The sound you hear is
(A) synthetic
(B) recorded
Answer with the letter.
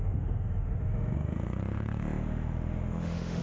A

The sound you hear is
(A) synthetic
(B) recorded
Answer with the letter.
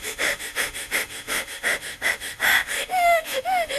A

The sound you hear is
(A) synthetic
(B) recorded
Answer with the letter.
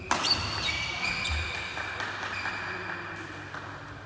B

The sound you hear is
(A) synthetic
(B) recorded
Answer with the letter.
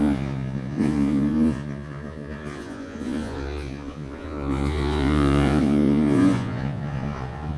A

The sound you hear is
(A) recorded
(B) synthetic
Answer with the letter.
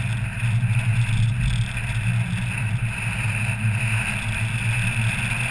A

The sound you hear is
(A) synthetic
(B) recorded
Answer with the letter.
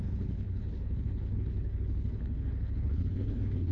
A